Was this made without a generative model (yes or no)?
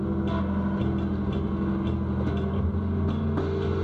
yes